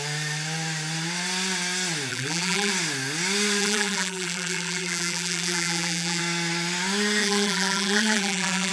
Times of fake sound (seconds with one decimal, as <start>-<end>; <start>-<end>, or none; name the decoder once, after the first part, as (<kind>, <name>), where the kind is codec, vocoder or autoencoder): 2.1-2.7 (vocoder, BigVGAN v2); 3.6-6.2; 7.2-8.7